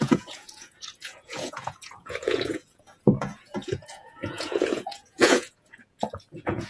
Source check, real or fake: fake